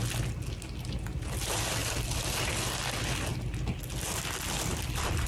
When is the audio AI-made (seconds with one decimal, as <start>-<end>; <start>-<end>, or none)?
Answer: none